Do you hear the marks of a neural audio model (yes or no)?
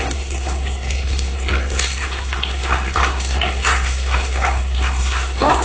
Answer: yes